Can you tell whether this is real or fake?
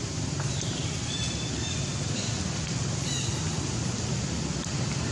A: real